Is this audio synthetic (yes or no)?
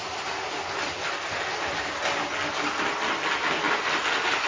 no